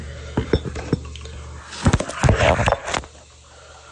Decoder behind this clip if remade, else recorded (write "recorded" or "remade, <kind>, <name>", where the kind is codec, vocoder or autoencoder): recorded